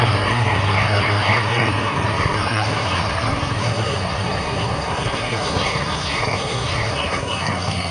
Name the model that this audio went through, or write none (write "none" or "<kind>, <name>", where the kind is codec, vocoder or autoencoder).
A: codec, SNAC